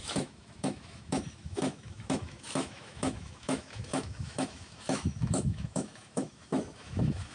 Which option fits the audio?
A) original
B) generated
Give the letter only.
B